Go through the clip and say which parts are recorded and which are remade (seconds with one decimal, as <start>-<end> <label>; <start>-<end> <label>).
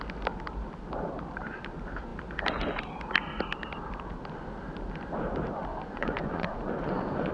0.0-5.7 recorded; 5.7-7.3 remade